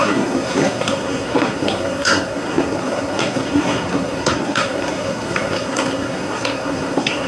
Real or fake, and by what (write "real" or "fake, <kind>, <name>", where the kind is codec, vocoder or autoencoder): fake, codec, SNAC